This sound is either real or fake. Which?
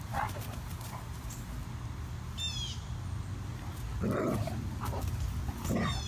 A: real